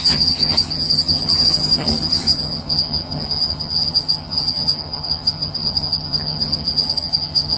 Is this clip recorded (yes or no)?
no